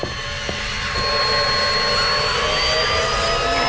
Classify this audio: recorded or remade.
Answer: recorded